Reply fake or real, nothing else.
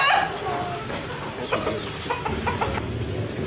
real